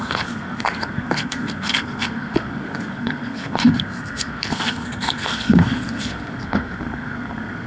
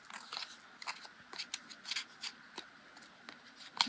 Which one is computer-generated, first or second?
first